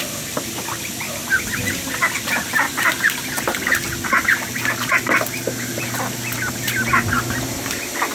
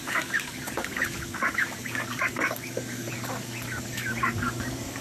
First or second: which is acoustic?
first